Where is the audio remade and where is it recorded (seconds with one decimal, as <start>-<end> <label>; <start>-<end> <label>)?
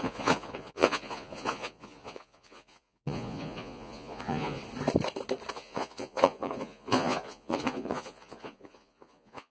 0.0-4.6 remade; 4.6-5.5 recorded; 5.5-9.5 remade